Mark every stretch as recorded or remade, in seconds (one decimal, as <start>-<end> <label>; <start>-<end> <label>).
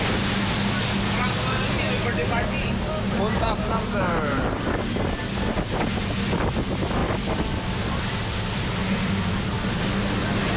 0.0-10.6 recorded